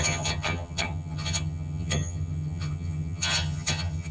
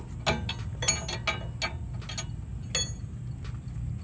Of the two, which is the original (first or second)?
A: second